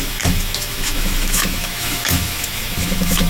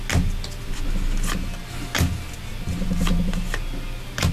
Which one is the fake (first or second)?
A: first